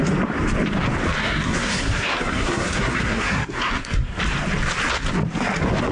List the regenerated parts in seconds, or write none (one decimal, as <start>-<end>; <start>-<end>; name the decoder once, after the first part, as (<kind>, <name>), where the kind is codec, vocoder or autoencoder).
1.2-4.2 (codec, SNAC)